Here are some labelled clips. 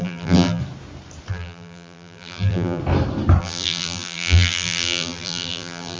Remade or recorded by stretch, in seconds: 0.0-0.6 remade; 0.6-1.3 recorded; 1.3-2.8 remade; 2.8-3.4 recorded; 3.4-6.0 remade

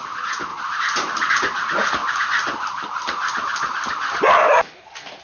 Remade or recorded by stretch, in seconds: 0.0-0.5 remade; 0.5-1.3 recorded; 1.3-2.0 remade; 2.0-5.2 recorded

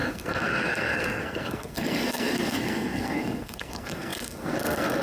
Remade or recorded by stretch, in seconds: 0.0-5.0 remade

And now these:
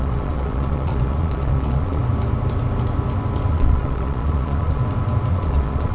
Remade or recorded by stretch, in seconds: 0.0-2.0 remade; 2.0-3.5 recorded; 3.5-4.8 remade; 4.8-5.3 recorded; 5.3-5.9 remade

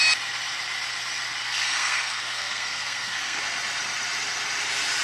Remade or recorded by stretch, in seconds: 0.0-1.4 recorded; 1.4-3.4 remade; 3.4-5.0 recorded

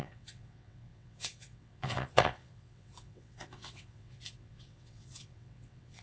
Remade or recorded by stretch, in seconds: 0.0-6.0 remade